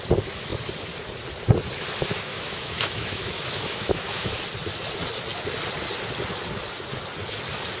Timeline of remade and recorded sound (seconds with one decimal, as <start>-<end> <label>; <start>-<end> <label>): 0.0-2.3 recorded; 2.3-4.4 remade; 4.4-7.8 recorded